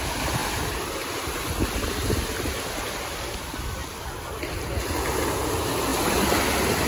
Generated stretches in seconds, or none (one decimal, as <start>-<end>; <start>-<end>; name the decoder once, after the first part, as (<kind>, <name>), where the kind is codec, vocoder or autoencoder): none

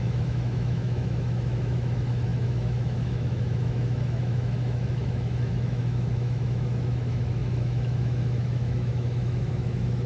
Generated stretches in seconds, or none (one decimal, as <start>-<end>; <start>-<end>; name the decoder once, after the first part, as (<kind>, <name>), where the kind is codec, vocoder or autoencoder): 0.0-10.1 (autoencoder, DAC-VAE)

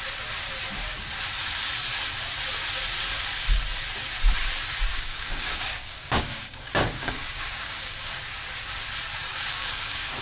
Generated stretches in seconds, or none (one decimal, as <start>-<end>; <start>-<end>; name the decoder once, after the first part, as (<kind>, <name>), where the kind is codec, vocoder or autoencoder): 4.9-8.2 (codec, DAC); 9.3-10.2

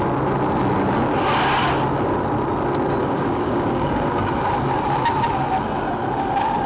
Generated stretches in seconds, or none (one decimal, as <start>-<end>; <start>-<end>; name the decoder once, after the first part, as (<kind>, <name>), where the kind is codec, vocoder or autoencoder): 3.0-4.3 (codec, DAC)

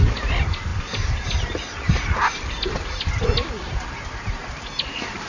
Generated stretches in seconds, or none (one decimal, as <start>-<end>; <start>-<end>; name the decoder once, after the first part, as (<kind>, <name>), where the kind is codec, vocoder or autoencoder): none

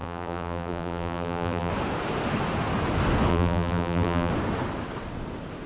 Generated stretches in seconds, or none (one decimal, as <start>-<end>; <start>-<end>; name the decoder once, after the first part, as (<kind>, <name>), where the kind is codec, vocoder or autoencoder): 0.0-1.7 (vocoder, BigVGAN v2); 3.3-4.3